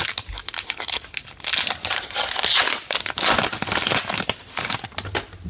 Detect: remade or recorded recorded